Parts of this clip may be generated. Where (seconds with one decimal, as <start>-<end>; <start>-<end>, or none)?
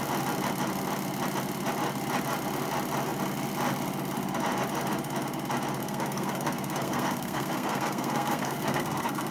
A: 5.8-9.3